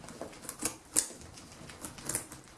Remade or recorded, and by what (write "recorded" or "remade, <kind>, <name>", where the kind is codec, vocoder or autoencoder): recorded